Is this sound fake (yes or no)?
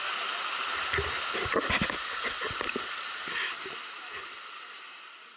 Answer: no